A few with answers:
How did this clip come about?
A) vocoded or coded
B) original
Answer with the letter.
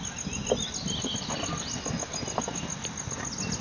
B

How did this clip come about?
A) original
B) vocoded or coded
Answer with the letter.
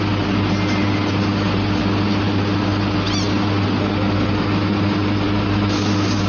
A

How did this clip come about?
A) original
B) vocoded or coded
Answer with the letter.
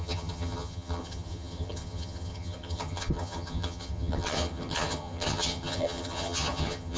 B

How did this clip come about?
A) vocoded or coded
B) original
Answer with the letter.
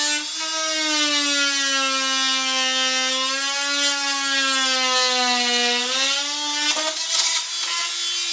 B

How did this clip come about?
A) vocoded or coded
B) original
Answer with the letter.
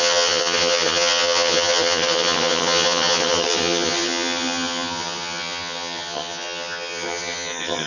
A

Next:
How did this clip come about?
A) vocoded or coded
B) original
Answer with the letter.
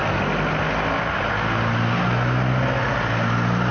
B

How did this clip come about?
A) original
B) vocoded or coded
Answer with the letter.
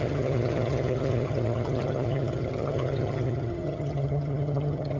B